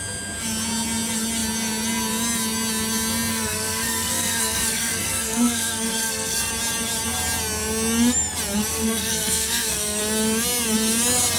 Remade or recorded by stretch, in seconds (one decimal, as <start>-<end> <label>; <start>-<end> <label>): 0.0-3.3 recorded; 3.3-6.5 remade; 6.5-8.7 recorded; 8.7-10.0 remade; 10.0-11.4 recorded